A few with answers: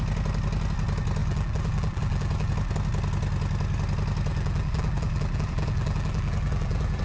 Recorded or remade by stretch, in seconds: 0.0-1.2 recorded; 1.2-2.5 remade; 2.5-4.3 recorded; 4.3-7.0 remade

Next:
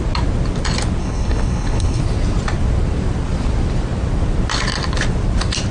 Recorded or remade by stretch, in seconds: 0.0-1.0 recorded; 1.0-2.0 remade; 2.0-5.7 recorded

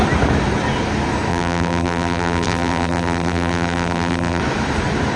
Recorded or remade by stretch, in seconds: 0.0-1.3 recorded; 1.3-4.4 remade; 4.4-5.2 recorded

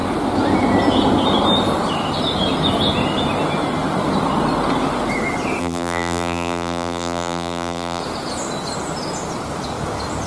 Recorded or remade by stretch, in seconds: 0.0-5.6 recorded; 5.6-8.0 remade; 8.0-10.3 recorded